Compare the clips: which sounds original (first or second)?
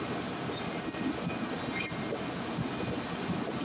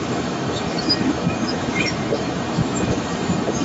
first